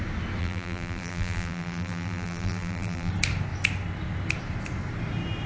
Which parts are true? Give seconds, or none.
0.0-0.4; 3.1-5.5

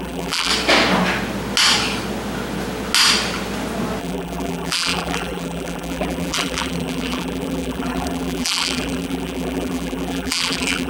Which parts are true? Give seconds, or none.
0.5-4.0

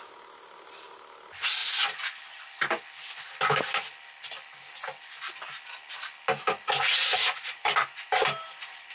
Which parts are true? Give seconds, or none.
0.0-6.9

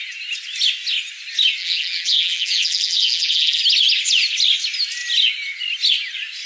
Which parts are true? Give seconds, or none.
0.0-1.6; 3.6-6.5

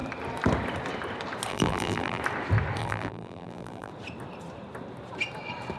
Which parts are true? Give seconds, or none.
0.0-1.5; 2.2-2.8; 3.9-5.8